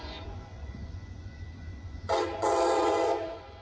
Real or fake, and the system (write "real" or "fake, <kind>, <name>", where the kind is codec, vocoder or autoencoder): fake, vocoder, Vocos